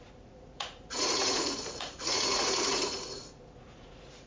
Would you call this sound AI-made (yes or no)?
yes